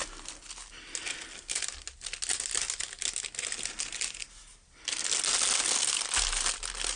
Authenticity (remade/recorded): recorded